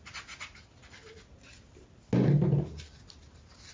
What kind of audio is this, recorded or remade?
recorded